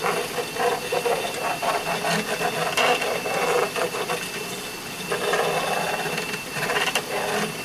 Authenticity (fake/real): real